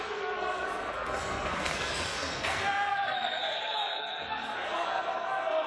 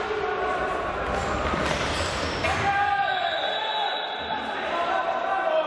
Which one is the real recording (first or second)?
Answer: second